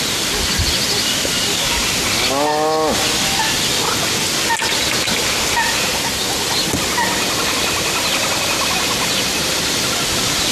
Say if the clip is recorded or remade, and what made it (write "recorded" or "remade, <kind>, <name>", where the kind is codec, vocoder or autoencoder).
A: recorded